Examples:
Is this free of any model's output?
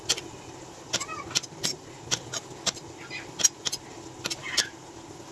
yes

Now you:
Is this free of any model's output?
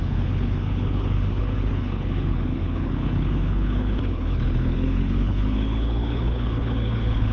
no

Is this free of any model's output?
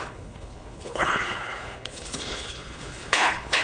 no